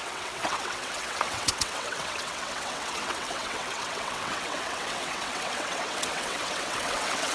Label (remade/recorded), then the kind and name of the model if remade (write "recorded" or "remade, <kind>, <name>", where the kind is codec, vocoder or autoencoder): remade, vocoder, WaveNeXt